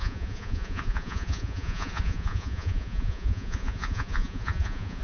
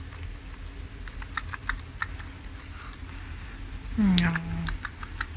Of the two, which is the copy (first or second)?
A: first